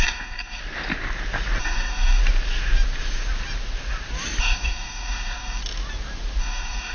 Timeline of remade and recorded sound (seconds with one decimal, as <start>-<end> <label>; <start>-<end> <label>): 0.0-0.6 remade; 0.6-1.6 recorded; 1.6-2.2 remade; 2.2-4.4 recorded; 4.4-5.6 remade; 5.6-6.4 recorded; 6.4-6.9 remade